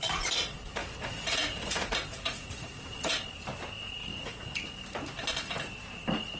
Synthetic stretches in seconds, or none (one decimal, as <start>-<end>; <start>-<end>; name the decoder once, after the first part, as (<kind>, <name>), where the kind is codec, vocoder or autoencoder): 0.8-3.1 (vocoder, Vocos); 4.0-4.5